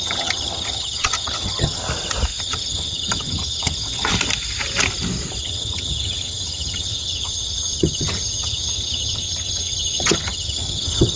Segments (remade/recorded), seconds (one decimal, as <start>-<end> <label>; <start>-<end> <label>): 0.0-1.8 remade; 1.8-2.4 recorded; 2.4-4.1 remade; 4.1-5.4 recorded; 5.4-11.2 remade